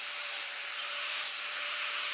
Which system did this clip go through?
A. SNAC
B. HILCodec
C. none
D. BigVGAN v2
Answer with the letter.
D